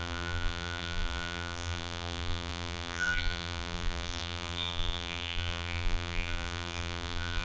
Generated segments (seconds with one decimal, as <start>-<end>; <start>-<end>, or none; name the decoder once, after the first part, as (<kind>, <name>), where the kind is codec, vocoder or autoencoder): 0.0-7.4 (vocoder, BigVGAN v2)